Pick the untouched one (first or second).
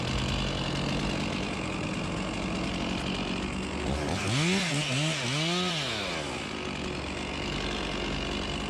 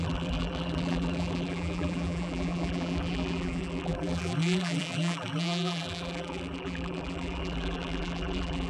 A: first